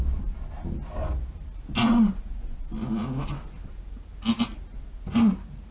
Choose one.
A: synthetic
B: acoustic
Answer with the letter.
B